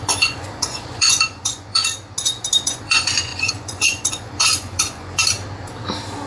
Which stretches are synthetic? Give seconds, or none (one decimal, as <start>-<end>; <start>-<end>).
0.0-1.8; 2.6-5.2